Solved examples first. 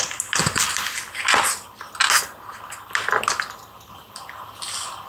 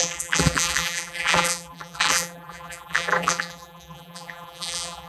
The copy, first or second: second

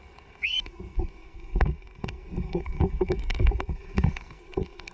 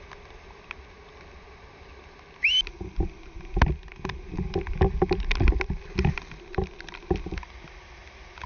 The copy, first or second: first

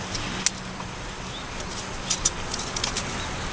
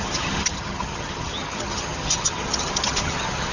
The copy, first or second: second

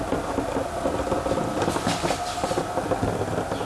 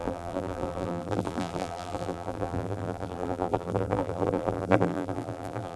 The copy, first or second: second